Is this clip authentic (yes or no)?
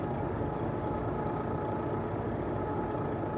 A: yes